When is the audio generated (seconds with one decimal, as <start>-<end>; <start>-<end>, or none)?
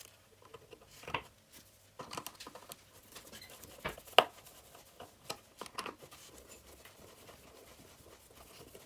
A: none